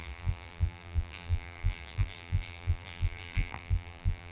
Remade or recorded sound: remade